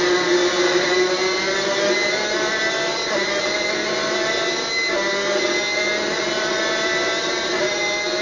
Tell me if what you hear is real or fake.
real